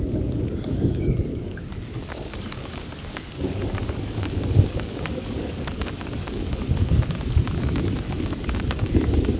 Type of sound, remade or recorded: remade